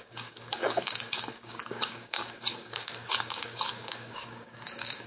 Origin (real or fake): fake